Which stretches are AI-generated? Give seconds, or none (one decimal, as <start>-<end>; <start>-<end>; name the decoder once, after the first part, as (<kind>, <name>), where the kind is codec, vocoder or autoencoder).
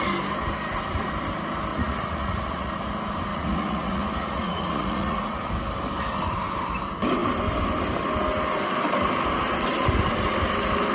1.7-2.7 (vocoder, Vocos); 3.3-5.5